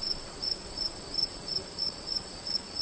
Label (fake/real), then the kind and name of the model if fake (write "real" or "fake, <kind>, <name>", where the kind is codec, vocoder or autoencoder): fake, vocoder, Vocos